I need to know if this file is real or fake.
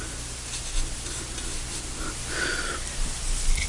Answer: real